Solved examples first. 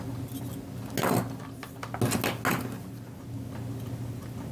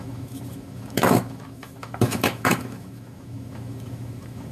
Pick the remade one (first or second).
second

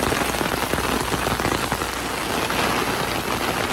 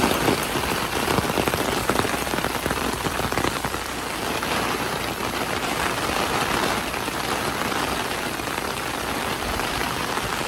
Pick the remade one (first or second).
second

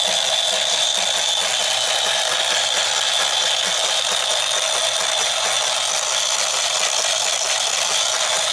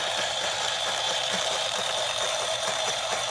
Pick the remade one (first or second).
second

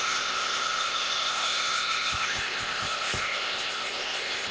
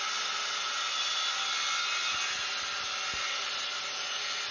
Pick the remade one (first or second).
first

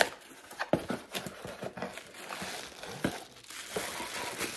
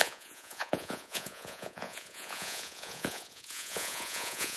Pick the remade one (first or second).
second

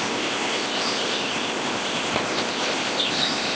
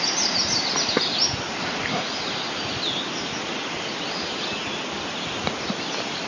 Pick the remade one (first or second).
first